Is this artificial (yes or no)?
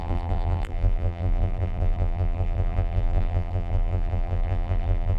yes